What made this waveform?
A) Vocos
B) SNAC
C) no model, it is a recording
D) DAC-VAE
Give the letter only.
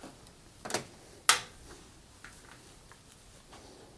C